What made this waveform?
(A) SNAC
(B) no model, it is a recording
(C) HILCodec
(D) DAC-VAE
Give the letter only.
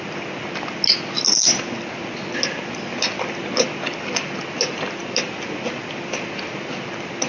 B